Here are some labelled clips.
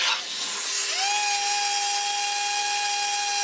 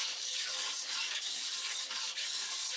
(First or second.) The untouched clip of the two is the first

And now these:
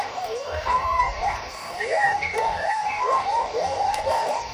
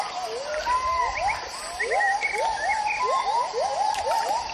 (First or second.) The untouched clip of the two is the second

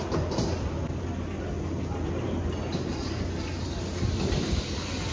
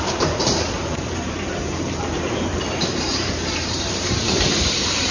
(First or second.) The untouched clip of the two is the first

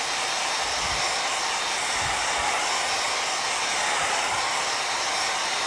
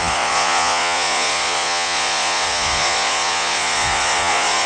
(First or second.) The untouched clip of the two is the first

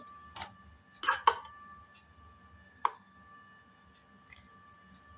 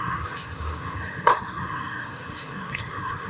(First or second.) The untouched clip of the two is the first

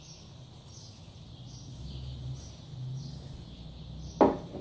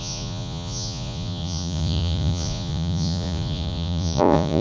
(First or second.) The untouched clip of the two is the first